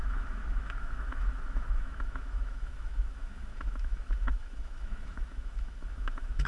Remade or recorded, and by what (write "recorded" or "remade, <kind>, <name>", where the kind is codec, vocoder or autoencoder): remade, autoencoder, DAC-VAE